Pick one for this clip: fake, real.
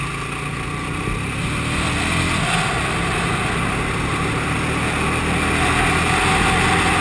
real